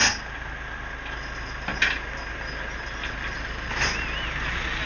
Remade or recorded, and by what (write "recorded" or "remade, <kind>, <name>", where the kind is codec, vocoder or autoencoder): recorded